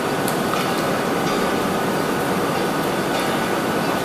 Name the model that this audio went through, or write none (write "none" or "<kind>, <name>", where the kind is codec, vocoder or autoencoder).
none